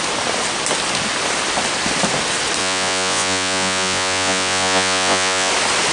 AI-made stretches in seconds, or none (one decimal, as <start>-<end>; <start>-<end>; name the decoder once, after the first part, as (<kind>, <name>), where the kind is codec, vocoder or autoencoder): 2.6-5.5 (vocoder, Vocos)